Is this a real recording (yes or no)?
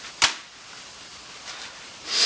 yes